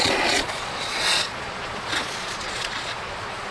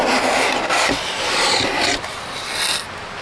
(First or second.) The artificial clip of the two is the first